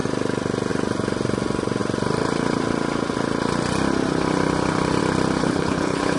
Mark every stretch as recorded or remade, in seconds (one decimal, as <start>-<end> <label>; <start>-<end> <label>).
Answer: 0.0-5.4 recorded; 5.4-6.2 remade